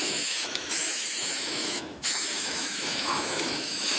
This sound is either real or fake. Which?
fake